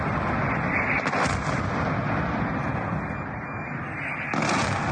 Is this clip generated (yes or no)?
no